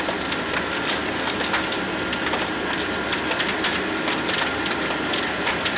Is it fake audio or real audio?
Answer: real